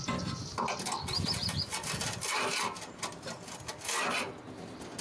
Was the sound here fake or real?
real